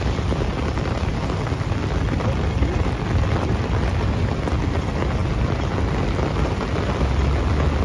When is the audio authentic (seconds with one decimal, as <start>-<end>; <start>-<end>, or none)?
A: 0.0-7.8